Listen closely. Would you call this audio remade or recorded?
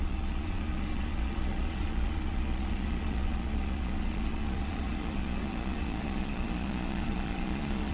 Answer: remade